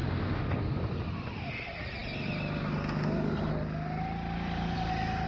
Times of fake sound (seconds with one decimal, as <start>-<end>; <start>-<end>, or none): none